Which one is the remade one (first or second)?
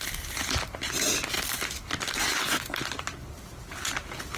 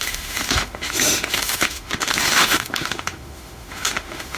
second